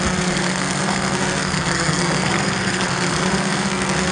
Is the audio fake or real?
fake